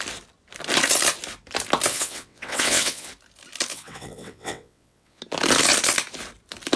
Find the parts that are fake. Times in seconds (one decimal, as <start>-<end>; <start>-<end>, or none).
1.9-3.1; 3.7-5.2